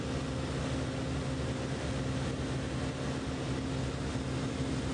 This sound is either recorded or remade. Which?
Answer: recorded